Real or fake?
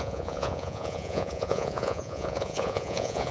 fake